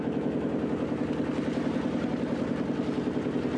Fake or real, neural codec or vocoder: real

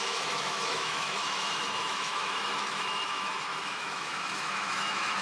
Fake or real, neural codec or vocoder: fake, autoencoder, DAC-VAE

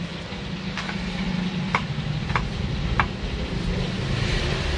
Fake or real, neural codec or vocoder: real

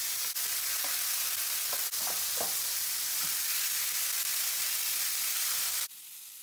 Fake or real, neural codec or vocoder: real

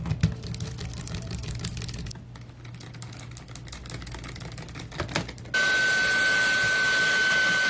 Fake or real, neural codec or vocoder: real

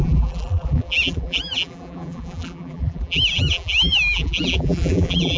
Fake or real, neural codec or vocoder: fake, vocoder, BigVGAN v2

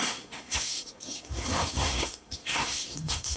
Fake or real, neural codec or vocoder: fake, codec, SNAC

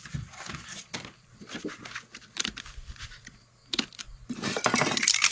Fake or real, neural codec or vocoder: fake, vocoder, BigVGAN v2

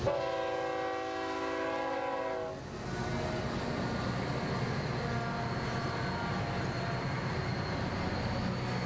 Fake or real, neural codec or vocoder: real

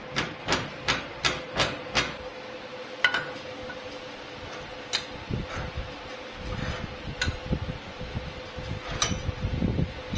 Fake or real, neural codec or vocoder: real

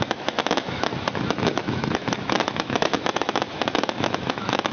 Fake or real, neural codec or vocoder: fake, autoencoder, DAC-VAE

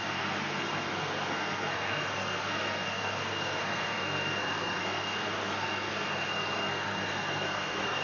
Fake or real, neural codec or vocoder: fake, codec, SNAC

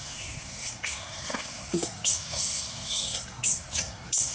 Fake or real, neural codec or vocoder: fake, codec, SNAC